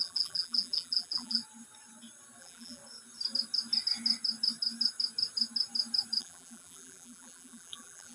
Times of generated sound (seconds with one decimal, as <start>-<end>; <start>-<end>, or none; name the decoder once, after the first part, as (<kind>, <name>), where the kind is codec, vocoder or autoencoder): 0.0-1.4 (vocoder, BigVGAN v2); 2.4-2.8; 6.2-8.1